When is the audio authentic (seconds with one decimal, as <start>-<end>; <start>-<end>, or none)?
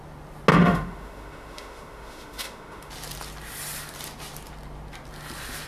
0.0-0.5; 2.9-5.7